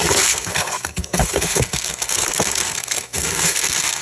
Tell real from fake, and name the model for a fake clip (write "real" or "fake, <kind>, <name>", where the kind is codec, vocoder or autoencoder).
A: fake, codec, SNAC